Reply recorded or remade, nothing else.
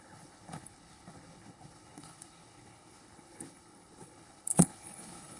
remade